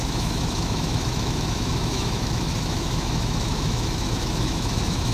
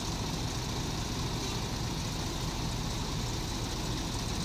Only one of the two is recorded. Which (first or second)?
second